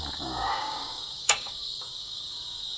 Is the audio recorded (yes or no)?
no